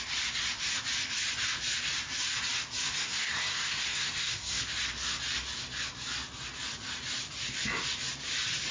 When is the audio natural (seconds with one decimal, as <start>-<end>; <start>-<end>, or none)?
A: 0.0-2.9; 4.6-8.7